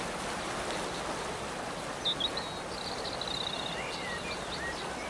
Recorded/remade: recorded